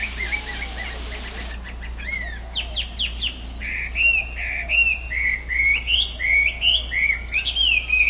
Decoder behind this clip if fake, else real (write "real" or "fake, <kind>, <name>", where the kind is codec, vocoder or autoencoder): real